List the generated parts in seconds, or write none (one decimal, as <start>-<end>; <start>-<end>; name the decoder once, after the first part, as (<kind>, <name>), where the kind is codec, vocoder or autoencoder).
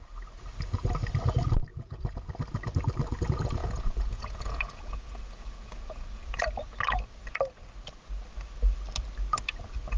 1.7-2.3 (vocoder, Vocos); 3.6-6.4